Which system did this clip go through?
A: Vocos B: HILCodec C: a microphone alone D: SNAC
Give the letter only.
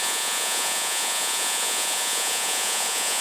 A